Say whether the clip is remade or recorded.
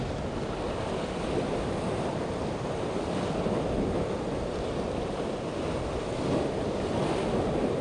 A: recorded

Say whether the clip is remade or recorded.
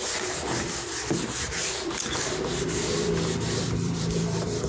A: remade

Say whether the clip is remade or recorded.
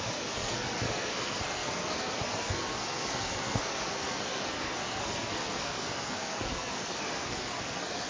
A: remade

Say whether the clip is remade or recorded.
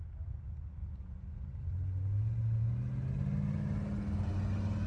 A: recorded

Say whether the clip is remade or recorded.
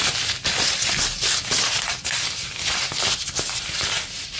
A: recorded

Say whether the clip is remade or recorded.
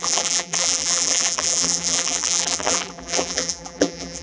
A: remade